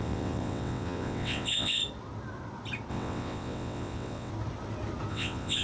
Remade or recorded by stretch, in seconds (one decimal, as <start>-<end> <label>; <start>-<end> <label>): 0.0-1.8 remade; 1.8-2.9 recorded; 2.9-4.3 remade; 4.3-5.1 recorded; 5.1-5.6 remade